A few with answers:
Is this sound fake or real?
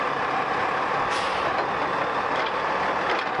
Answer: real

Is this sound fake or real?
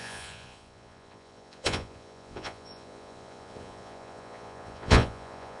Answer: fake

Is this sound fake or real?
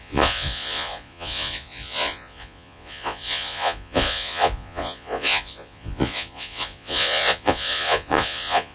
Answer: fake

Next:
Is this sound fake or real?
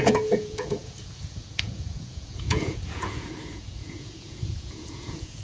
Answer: fake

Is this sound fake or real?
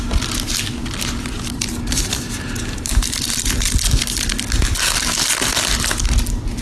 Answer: real